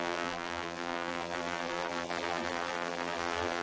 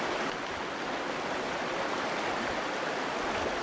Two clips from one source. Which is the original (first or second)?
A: second